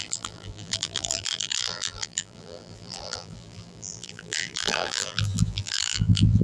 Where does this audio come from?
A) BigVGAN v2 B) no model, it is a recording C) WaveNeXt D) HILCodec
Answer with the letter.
A